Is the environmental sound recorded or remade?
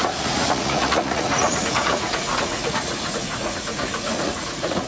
remade